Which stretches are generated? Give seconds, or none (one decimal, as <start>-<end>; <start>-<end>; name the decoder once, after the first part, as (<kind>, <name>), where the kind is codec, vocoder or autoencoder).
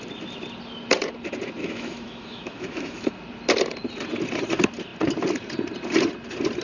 1.6-3.1 (autoencoder, DAC-VAE)